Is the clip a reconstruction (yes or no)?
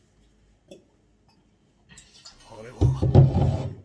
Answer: no